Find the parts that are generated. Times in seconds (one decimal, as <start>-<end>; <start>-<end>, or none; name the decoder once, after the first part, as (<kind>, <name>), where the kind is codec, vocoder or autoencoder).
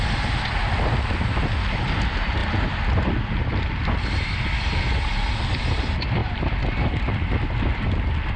2.4-3.1 (vocoder, BigVGAN v2); 6.2-7.3